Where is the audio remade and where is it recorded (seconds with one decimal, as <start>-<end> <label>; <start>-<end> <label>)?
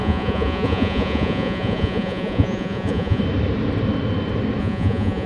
0.0-3.2 remade; 3.2-4.6 recorded; 4.6-5.3 remade